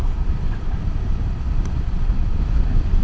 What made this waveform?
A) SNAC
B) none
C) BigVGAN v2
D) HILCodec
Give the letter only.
B